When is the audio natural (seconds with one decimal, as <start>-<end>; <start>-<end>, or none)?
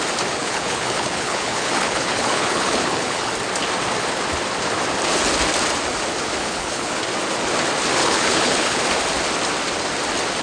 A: 0.0-0.4; 3.3-6.4; 7.0-8.0; 8.8-10.4